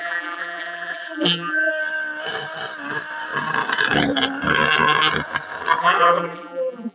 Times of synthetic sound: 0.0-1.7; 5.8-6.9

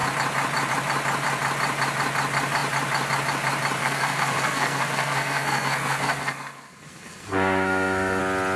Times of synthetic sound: 3.8-8.2

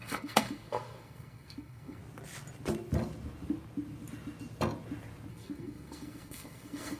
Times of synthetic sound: 0.0-2.0; 5.3-7.0

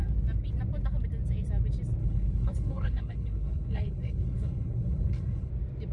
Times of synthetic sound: 2.0-5.5

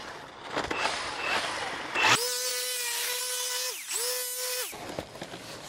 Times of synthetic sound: 2.5-3.2

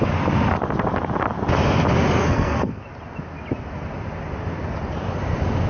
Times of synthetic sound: 2.2-2.8